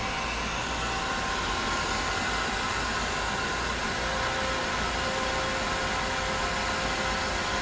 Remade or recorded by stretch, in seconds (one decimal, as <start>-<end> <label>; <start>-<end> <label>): 0.0-7.6 recorded